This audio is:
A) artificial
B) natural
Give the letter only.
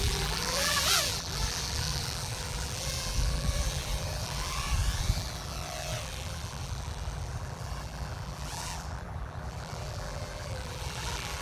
A